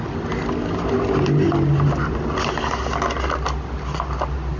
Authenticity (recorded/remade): recorded